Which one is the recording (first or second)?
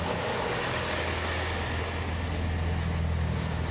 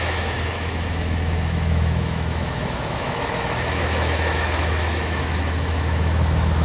first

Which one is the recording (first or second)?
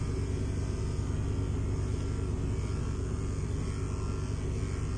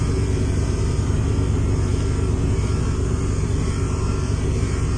first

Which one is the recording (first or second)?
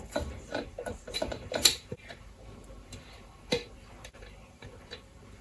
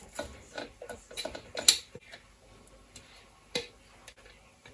second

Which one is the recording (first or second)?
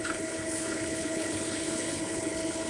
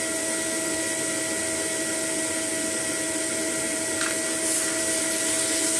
second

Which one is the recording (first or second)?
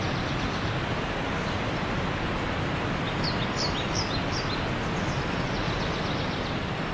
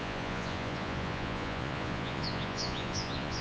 first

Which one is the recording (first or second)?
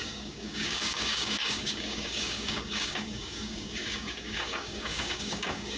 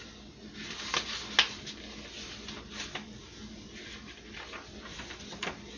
second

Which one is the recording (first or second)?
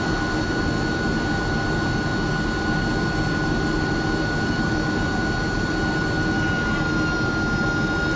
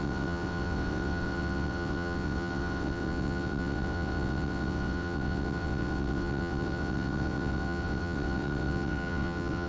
first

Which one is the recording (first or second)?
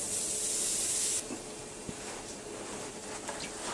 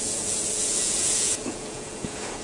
first